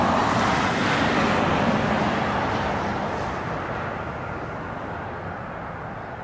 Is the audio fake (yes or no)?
no